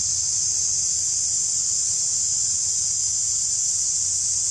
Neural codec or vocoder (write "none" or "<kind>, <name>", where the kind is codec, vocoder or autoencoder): none